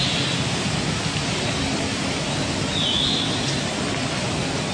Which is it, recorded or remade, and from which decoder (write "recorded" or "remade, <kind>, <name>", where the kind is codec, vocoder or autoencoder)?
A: recorded